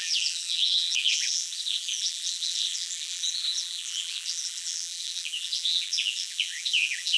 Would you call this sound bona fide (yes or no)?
no